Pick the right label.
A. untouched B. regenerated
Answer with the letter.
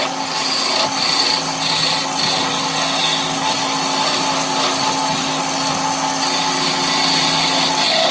A